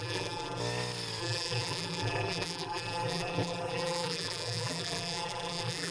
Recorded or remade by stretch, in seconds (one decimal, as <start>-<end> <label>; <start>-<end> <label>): 0.0-0.6 remade; 0.6-1.2 recorded; 1.2-5.9 remade